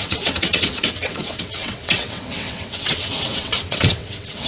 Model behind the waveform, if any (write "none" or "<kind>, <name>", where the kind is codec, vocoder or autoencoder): vocoder, WaveNeXt